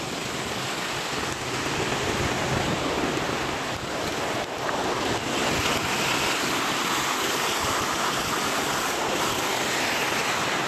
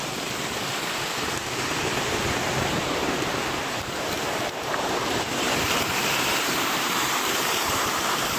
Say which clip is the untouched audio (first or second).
first